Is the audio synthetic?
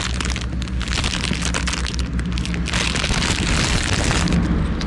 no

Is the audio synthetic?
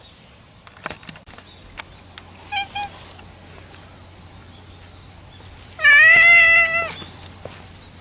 no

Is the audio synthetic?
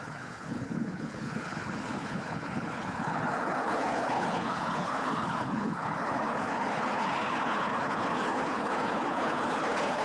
yes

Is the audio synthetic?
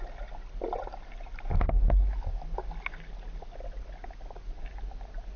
no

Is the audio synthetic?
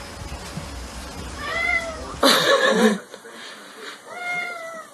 no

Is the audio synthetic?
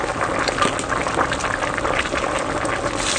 no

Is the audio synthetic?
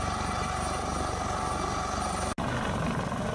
no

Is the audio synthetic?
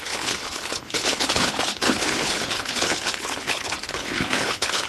yes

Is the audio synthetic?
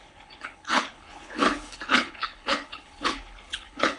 yes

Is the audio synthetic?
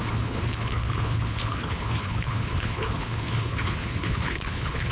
yes